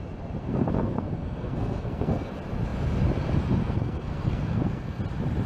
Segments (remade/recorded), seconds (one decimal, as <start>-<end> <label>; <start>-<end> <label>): 0.0-0.4 recorded; 0.4-2.3 remade; 2.3-3.6 recorded; 3.6-5.0 remade; 5.0-5.5 recorded